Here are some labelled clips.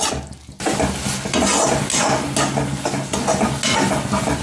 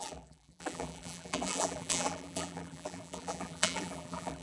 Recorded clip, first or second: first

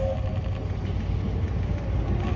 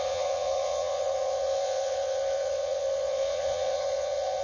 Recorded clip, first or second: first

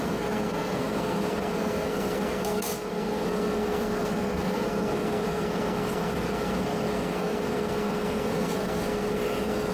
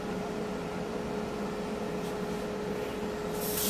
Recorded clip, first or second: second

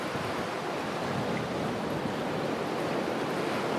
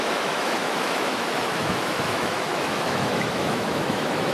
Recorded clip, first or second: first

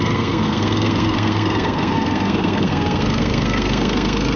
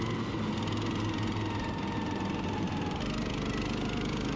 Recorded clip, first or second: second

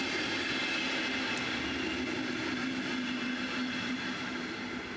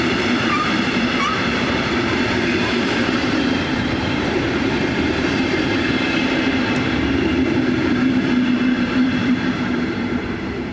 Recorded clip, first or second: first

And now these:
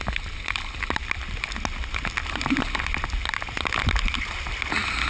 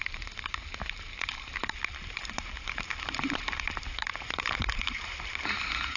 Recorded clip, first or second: first